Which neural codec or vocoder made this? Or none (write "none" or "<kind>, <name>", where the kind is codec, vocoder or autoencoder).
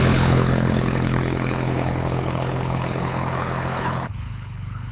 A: codec, HILCodec